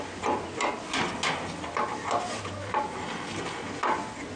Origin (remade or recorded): recorded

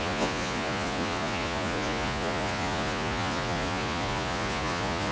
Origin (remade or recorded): remade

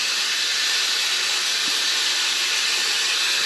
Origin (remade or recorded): recorded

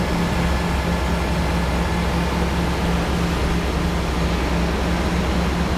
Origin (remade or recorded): recorded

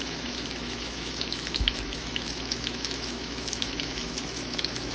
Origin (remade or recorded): remade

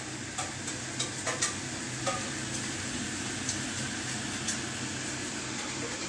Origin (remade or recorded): recorded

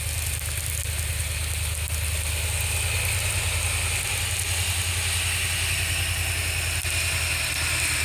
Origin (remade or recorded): recorded